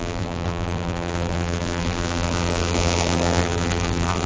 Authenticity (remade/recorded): remade